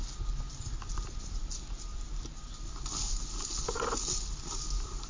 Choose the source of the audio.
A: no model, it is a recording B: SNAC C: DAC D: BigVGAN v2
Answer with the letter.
A